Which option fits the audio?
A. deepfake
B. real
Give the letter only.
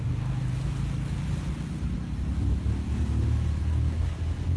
B